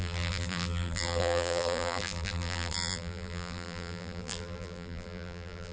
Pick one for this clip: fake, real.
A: fake